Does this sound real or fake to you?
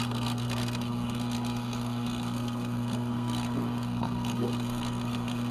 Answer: fake